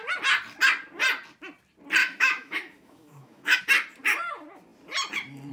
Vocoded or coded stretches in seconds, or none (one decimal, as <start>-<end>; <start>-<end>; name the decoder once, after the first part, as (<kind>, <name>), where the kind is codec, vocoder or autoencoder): 2.0-3.6 (autoencoder, DAC-VAE)

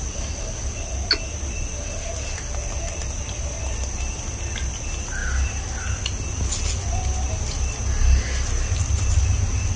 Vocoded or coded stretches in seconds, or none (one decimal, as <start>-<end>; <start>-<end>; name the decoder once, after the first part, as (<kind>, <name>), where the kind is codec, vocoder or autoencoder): none

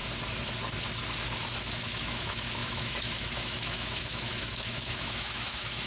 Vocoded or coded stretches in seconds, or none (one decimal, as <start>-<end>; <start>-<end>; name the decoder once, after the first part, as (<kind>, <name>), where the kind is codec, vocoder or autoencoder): 1.8-5.9 (autoencoder, DAC-VAE)

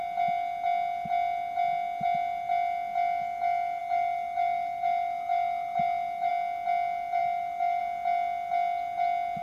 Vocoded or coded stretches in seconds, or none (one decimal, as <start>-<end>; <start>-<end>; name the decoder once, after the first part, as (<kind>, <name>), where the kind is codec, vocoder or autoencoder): 3.8-6.3 (autoencoder, DAC-VAE); 7.2-7.8